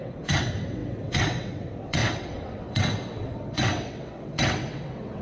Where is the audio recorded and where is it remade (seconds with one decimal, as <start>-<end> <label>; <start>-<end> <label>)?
0.0-5.2 remade